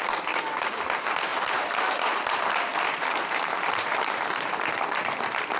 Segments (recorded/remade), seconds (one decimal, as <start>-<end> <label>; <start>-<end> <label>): 0.0-1.3 recorded; 1.3-1.9 remade; 1.9-2.7 recorded; 2.7-4.3 remade; 4.3-5.6 recorded